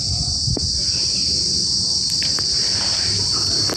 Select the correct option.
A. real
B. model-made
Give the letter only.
B